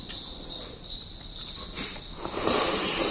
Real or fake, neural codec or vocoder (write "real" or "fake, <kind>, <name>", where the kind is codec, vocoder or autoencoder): real